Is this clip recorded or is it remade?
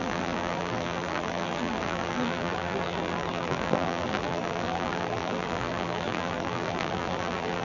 remade